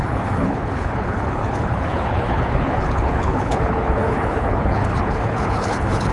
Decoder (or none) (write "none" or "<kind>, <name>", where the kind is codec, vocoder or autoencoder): codec, HILCodec